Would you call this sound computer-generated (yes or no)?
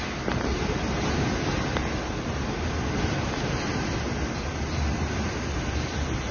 no